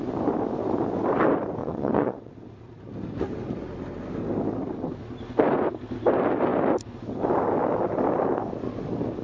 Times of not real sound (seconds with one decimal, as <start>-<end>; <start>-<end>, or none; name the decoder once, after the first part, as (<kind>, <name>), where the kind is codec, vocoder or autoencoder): 1.6-2.3 (vocoder, WaveNeXt)